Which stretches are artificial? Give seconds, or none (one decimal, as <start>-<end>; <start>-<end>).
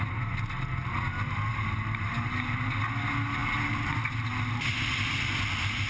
none